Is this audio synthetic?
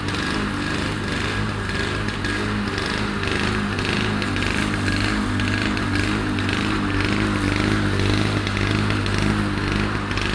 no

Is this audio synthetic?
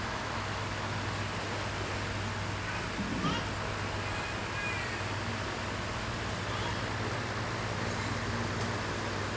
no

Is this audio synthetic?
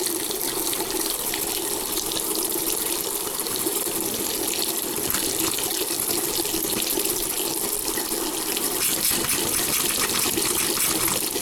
no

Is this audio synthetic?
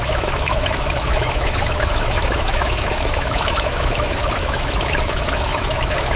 yes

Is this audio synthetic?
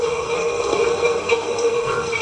yes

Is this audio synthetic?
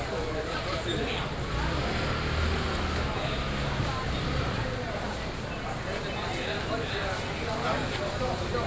no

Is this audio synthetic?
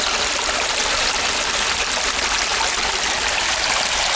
yes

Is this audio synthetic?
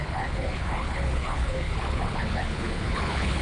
yes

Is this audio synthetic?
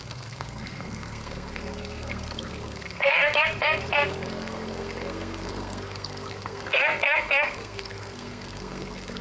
yes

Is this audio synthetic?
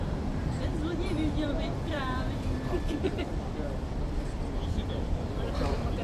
yes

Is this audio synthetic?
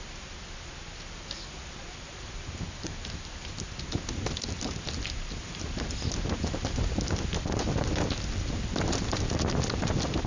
no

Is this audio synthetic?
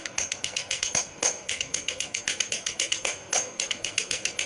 yes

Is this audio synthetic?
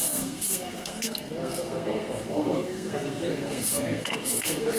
yes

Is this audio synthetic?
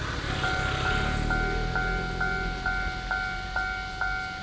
no